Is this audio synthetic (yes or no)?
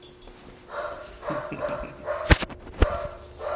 yes